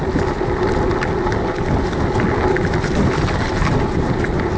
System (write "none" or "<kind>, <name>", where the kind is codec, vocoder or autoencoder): none